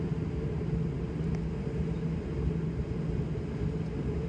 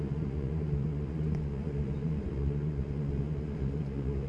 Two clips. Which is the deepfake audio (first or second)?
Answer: second